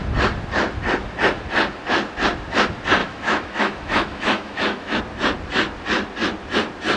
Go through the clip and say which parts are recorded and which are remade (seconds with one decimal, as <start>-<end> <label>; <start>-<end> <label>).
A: 0.0-3.0 recorded; 3.0-5.0 remade; 5.0-7.0 recorded